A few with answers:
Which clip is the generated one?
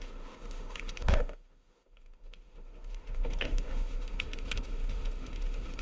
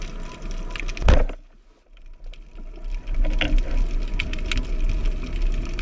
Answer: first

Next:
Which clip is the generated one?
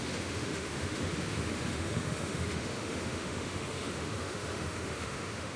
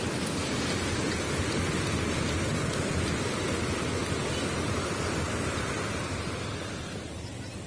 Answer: first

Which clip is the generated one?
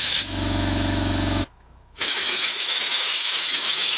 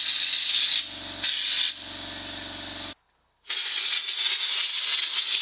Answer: first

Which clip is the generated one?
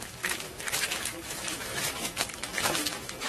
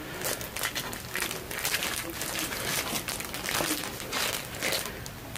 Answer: first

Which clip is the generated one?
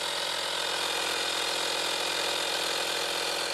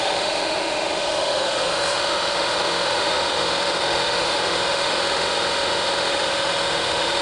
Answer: second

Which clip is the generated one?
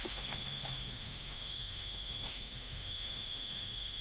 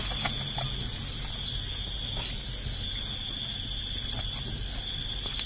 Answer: first